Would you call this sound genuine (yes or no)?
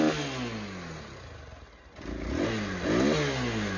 yes